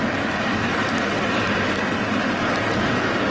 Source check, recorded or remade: recorded